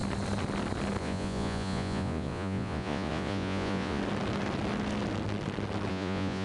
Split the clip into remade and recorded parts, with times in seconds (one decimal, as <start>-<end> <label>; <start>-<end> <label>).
0.0-1.0 recorded; 1.0-4.0 remade; 4.0-5.9 recorded; 5.9-6.4 remade